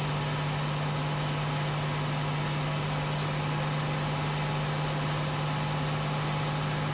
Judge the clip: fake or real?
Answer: real